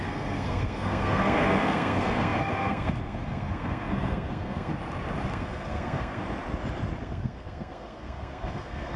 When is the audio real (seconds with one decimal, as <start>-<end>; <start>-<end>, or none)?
4.7-5.3; 6.2-7.0